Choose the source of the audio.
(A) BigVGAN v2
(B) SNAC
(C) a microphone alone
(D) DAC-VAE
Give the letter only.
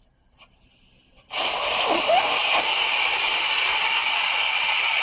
C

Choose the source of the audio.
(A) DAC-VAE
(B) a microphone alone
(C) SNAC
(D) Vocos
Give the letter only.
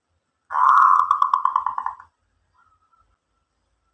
B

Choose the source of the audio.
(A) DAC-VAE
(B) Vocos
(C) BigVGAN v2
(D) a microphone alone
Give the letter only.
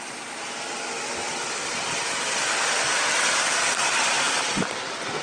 D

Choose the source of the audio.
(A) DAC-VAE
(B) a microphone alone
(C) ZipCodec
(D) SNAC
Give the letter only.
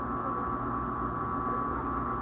B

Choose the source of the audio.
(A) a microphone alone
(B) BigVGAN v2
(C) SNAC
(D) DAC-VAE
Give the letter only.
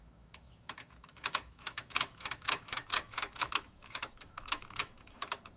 D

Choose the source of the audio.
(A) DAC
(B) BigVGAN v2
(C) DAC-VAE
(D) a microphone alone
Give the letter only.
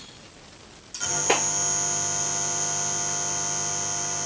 D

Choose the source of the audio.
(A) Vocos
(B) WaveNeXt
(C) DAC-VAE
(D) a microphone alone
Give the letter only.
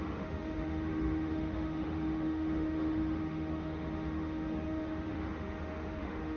C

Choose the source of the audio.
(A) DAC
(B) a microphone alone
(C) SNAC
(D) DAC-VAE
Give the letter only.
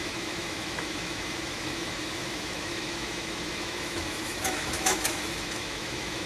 D